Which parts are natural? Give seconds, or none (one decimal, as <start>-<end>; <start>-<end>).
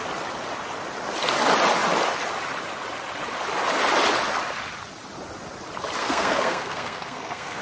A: 0.0-6.0